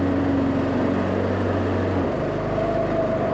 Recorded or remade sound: recorded